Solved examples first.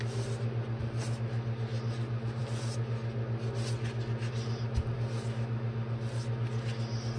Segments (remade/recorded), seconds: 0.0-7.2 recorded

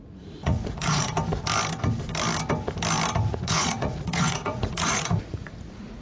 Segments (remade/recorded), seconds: 0.0-1.1 remade; 1.1-3.3 recorded; 3.3-6.0 remade

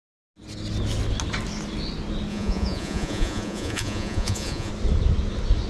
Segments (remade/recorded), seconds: 0.0-2.3 recorded; 2.3-4.7 remade; 4.7-5.7 recorded

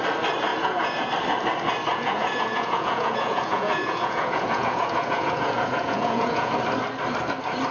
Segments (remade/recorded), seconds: 0.0-0.5 recorded; 0.5-1.1 remade; 1.1-1.9 recorded; 1.9-6.5 remade; 6.5-7.7 recorded

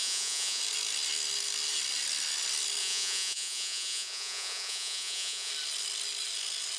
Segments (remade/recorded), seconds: 0.0-0.6 remade; 0.6-2.8 recorded; 2.8-5.5 remade; 5.5-6.8 recorded